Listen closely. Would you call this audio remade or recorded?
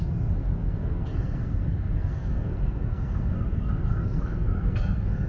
remade